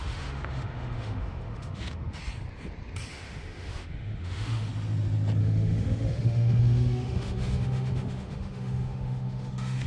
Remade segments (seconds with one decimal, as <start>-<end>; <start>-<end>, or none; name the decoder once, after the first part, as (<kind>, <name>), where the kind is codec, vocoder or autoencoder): 0.0-2.2 (autoencoder, DAC-VAE); 3.1-4.7; 5.4-9.9